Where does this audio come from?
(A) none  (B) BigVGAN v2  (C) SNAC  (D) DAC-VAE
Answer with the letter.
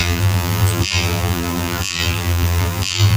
B